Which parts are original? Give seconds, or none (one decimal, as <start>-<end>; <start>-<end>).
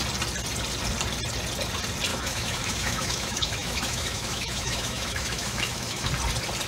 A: 0.0-2.1; 6.1-6.7